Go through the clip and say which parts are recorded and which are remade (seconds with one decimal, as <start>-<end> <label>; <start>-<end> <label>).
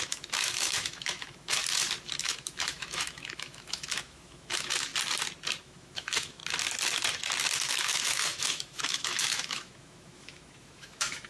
0.0-1.6 remade; 1.6-2.2 recorded; 2.2-4.9 remade; 4.9-5.6 recorded; 5.6-6.4 remade; 6.4-7.7 recorded; 7.7-11.3 remade